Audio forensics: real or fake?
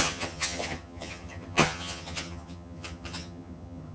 fake